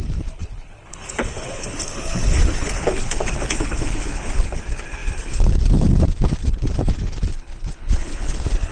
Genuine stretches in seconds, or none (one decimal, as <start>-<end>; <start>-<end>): none

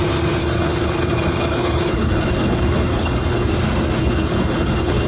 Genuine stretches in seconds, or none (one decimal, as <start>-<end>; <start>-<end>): 0.0-0.4; 3.5-4.0

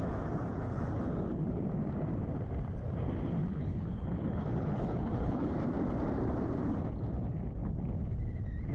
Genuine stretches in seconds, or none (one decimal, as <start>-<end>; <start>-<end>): 0.0-0.5; 1.0-3.5; 5.5-8.7